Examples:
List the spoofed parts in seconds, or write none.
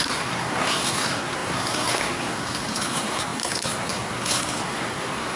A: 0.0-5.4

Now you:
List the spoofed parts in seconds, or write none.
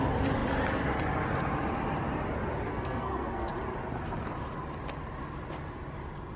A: 2.7-3.5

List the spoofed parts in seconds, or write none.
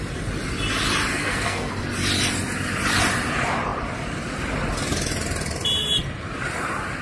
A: 1.1-1.7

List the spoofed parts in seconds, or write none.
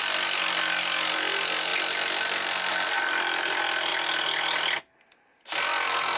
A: none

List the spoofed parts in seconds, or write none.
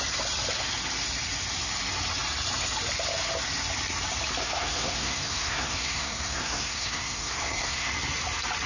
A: 4.4-7.9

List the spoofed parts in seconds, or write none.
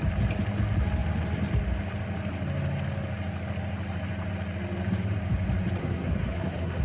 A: 5.8-6.8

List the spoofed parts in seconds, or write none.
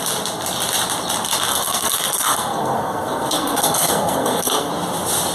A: 1.5-4.7